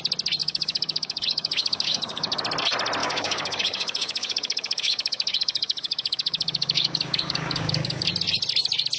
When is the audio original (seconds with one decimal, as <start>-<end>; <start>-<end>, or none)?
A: 0.0-0.4; 2.4-3.0; 8.1-9.0

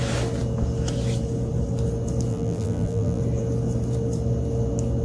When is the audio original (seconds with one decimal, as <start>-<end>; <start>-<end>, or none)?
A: 0.0-2.3; 3.2-5.0

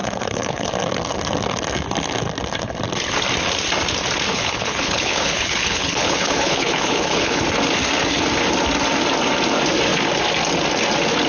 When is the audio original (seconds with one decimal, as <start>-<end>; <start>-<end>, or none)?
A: 0.7-4.3; 7.4-11.3

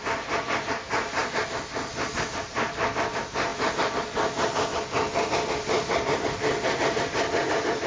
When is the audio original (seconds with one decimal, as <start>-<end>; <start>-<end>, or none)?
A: 0.0-7.9

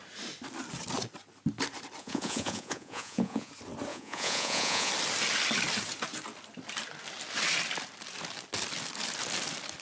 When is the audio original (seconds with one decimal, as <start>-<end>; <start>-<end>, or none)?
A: 0.0-2.0; 3.5-3.9; 4.9-9.8